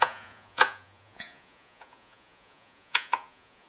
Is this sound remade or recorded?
remade